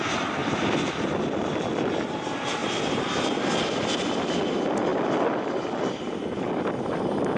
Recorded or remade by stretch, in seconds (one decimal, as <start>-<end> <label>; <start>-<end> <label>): 0.0-0.4 remade; 0.4-1.9 recorded; 1.9-7.4 remade